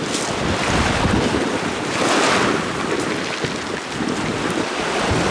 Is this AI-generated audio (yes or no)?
no